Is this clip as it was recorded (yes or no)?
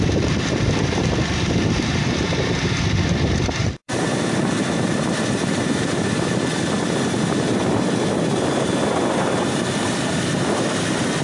no